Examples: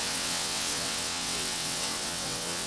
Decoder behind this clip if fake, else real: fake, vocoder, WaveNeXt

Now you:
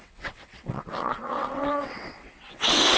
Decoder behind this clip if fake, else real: fake, vocoder, WaveNeXt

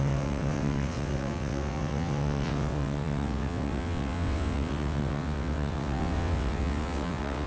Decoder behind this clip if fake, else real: fake, vocoder, WaveNeXt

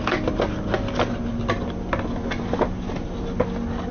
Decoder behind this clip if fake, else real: real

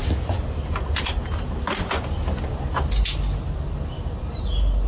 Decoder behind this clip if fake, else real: real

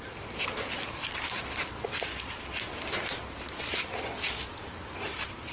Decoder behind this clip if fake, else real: real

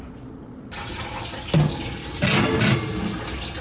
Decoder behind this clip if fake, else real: real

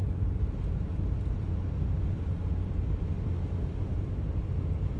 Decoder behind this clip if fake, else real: real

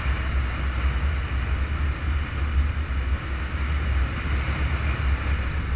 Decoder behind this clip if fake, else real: real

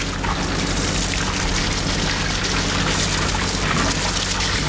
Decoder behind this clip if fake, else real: real